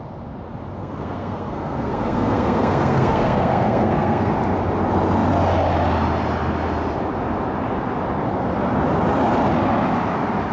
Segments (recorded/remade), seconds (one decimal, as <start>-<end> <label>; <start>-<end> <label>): 0.0-0.8 recorded; 0.8-4.3 remade; 4.3-10.5 recorded